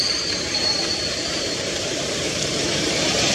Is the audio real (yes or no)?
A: no